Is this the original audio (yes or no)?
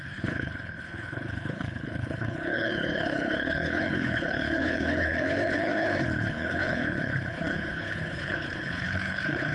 no